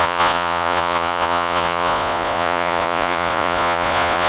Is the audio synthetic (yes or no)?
yes